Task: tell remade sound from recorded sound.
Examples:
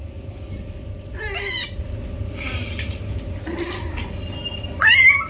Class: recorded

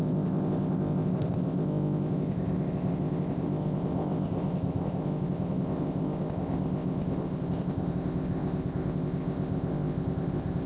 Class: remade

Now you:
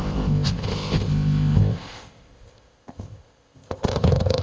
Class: remade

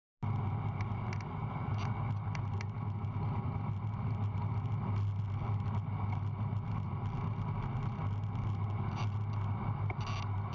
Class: recorded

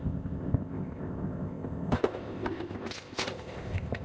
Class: remade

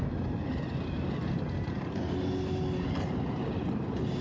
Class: recorded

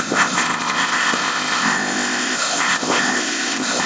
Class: remade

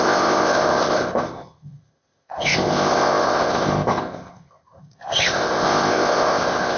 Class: remade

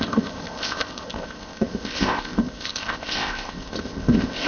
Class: remade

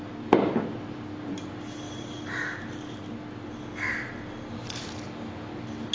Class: recorded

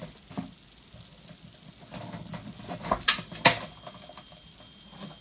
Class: recorded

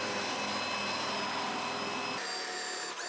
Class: recorded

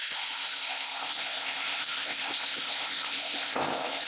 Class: remade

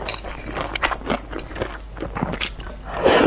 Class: recorded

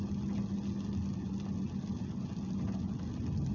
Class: recorded